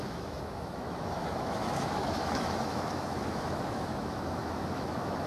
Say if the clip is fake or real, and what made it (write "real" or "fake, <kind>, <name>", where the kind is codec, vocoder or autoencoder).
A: fake, autoencoder, DAC-VAE